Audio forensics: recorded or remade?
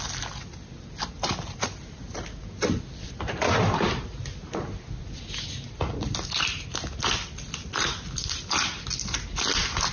recorded